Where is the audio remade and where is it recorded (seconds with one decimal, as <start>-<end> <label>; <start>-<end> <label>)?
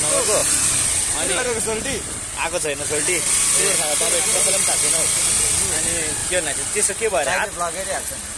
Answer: 0.0-0.4 recorded; 0.4-5.2 remade; 5.2-6.2 recorded; 6.2-6.9 remade; 6.9-8.4 recorded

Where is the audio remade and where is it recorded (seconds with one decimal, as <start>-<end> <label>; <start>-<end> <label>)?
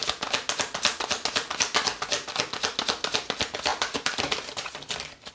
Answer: 0.0-3.2 recorded; 3.2-5.3 remade